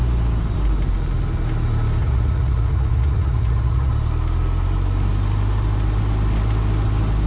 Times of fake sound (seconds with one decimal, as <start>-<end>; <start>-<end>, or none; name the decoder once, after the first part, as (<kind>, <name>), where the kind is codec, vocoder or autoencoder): 2.0-3.9 (vocoder, Vocos)